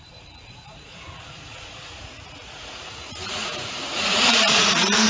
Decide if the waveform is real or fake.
fake